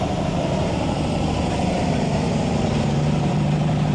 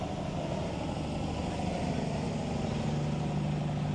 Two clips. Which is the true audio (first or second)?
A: second